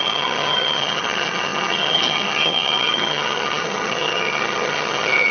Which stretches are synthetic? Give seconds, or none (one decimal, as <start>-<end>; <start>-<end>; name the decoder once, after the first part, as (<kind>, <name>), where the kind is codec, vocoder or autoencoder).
0.0-5.3 (vocoder, HiFi-GAN)

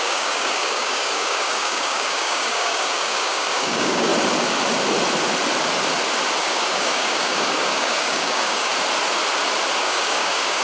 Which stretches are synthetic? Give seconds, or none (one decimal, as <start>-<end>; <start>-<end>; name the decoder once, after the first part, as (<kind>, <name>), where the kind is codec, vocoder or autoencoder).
0.0-4.1 (codec, DAC); 6.4-8.7; 9.8-10.6

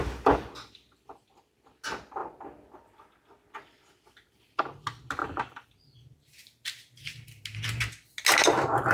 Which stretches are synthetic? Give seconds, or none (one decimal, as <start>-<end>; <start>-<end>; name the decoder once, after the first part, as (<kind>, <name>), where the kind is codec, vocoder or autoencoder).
none

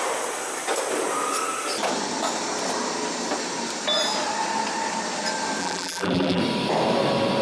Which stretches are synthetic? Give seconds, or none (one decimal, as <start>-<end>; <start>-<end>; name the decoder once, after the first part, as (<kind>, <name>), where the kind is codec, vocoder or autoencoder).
5.6-6.4 (vocoder, BigVGAN v2)

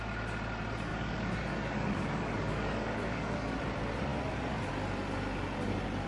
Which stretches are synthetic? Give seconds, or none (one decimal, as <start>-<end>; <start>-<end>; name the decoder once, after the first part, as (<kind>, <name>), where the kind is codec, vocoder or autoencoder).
0.9-3.5 (codec, DAC)

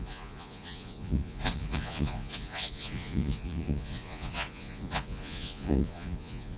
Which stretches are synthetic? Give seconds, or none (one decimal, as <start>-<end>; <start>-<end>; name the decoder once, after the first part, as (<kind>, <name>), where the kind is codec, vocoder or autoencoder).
0.0-6.6 (vocoder, Vocos)